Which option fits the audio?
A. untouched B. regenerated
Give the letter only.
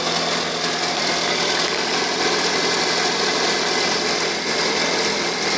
A